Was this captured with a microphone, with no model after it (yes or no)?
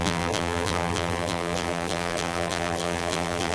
no